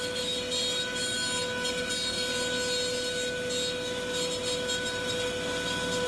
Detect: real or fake real